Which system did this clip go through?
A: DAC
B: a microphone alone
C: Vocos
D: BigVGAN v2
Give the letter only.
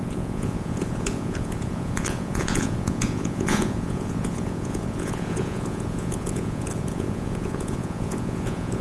C